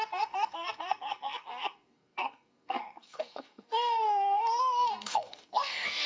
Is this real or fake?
fake